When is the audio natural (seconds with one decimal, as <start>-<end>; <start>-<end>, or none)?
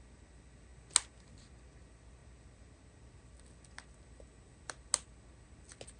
0.0-6.0